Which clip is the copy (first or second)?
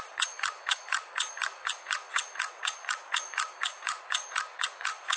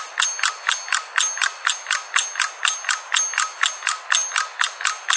first